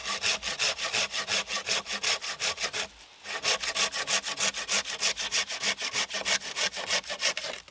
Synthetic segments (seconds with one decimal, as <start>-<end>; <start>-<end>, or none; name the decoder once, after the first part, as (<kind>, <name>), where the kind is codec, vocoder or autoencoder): none